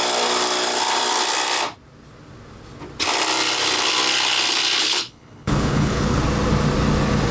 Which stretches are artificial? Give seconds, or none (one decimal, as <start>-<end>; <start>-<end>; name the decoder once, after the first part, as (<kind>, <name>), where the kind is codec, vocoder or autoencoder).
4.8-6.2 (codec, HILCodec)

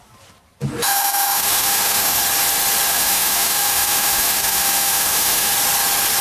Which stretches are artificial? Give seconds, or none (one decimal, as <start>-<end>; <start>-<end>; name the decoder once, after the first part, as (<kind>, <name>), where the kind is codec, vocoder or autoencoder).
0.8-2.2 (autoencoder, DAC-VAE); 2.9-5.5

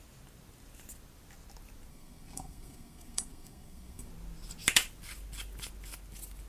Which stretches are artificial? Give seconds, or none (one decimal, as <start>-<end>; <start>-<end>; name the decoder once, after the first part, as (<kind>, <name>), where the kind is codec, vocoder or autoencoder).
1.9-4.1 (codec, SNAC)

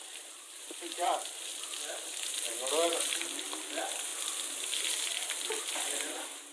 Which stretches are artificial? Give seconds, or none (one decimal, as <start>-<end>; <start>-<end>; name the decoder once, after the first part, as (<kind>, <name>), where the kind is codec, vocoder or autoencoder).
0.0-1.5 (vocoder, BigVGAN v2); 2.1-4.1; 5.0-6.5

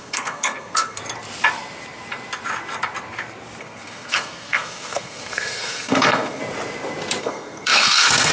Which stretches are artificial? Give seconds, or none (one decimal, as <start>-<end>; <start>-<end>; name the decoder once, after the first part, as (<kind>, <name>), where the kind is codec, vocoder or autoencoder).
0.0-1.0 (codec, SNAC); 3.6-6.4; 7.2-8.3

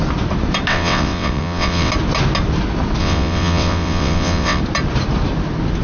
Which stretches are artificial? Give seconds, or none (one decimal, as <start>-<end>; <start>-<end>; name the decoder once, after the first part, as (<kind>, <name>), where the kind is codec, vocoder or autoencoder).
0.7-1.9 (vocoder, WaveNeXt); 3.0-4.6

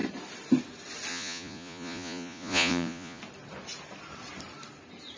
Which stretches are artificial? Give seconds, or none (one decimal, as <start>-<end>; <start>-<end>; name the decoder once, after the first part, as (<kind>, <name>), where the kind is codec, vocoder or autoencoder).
1.1-3.2 (vocoder, Vocos)

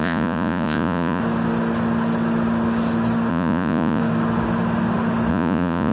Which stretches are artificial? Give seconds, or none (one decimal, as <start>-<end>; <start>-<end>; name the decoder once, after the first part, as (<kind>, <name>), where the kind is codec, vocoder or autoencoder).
0.0-1.2 (vocoder, Vocos); 3.3-4.0; 5.3-5.9